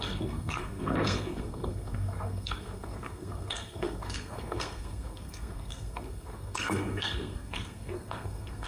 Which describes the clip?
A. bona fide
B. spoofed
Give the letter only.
B